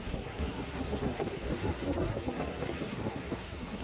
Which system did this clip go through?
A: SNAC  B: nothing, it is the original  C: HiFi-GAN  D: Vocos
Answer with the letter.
A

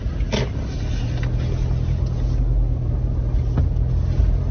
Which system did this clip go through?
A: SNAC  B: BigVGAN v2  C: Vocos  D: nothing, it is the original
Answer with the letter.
D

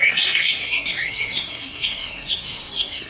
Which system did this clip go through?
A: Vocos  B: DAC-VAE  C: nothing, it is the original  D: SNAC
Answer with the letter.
D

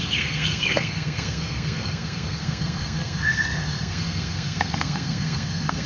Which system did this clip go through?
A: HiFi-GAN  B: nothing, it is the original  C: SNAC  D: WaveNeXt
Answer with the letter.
C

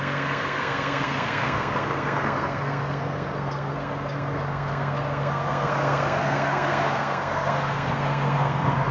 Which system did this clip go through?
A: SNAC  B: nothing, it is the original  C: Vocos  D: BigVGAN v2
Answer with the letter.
A